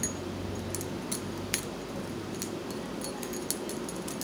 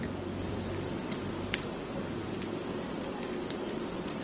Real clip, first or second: first